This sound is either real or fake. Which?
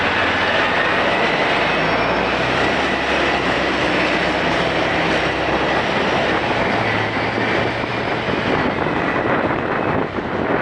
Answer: real